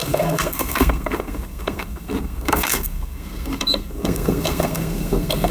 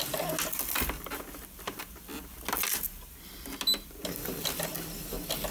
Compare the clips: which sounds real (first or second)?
second